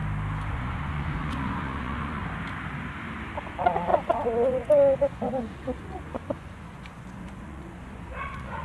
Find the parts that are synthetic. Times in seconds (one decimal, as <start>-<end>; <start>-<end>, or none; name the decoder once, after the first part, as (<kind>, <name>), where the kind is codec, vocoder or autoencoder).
0.5-2.2 (vocoder, Vocos); 3.4-8.6